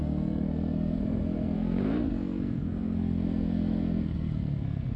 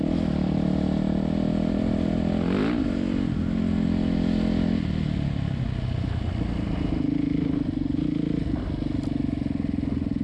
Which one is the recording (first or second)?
second